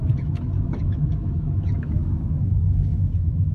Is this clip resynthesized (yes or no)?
yes